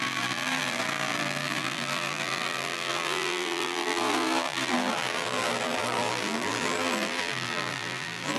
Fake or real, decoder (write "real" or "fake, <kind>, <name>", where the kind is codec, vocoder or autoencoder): fake, vocoder, BigVGAN v2